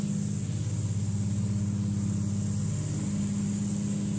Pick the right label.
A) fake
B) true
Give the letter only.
B